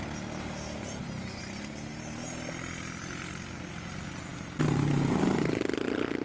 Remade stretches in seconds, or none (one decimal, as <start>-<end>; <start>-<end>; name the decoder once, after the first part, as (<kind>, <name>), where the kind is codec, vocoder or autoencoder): none